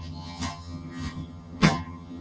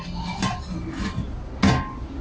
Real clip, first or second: second